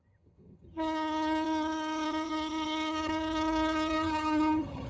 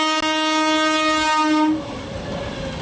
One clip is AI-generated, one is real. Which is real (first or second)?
second